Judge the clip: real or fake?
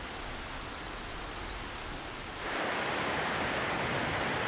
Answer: real